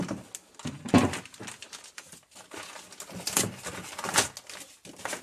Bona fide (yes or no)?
yes